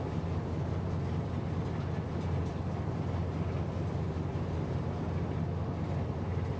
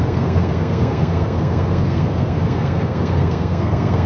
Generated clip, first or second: second